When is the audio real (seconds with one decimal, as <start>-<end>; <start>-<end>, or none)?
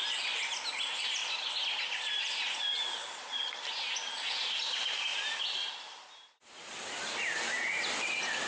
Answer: 0.0-8.5